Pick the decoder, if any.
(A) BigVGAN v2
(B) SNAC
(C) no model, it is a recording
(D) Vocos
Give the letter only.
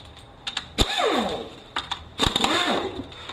A